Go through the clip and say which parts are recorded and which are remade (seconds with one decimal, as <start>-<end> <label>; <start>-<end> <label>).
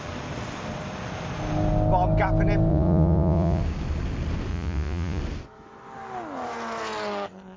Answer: 0.0-2.7 recorded; 2.7-3.6 remade; 3.6-4.5 recorded; 4.5-5.2 remade; 5.2-7.6 recorded